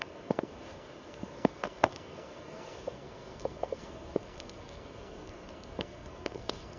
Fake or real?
fake